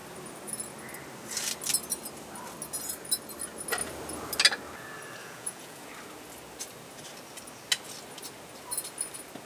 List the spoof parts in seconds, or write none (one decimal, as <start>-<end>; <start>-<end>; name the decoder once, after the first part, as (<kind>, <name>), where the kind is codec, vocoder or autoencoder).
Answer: 5.2-5.9 (vocoder, Vocos)